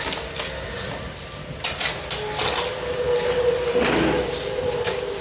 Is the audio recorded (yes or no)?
yes